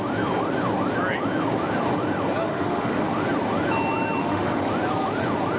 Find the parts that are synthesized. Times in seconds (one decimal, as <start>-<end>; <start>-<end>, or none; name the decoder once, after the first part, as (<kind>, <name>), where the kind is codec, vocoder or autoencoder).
2.5-3.1 (autoencoder, DAC-VAE); 4.2-4.7